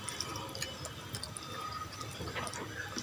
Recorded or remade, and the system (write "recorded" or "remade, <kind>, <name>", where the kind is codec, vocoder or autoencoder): recorded